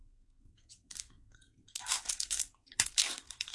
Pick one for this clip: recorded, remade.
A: remade